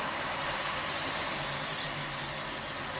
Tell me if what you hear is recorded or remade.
recorded